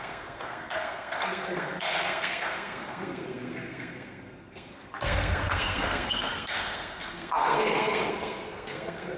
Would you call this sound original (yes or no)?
no